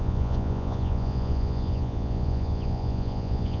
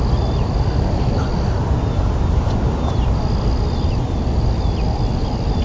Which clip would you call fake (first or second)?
first